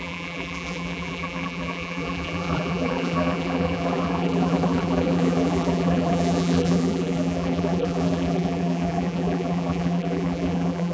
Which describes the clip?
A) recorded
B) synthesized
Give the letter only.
B